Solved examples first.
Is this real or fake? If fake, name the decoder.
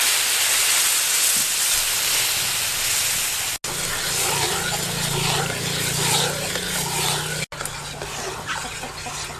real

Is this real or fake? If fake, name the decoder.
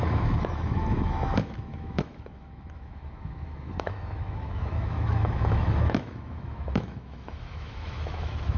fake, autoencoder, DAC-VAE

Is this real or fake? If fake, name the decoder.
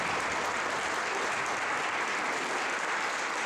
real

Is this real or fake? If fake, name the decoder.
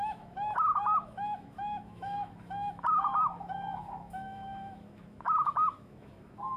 fake, autoencoder, DAC-VAE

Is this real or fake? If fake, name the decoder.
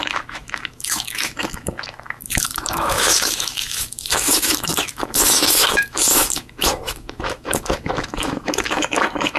fake, autoencoder, DAC-VAE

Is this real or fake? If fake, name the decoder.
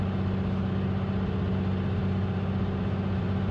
real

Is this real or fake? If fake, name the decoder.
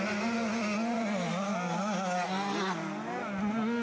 real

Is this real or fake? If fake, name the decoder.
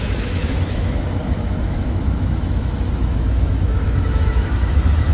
fake, autoencoder, DAC-VAE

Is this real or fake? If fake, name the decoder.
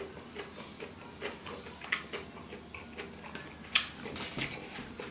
real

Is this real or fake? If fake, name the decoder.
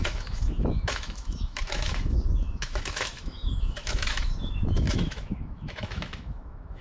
fake, autoencoder, DAC-VAE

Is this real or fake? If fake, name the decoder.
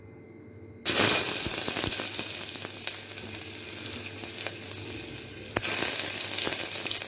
real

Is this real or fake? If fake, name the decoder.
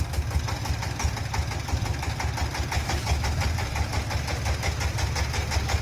real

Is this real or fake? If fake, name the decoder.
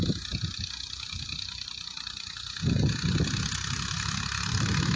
real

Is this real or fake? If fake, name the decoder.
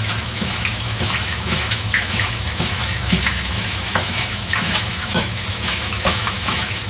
fake, autoencoder, DAC-VAE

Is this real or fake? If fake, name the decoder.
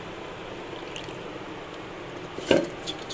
real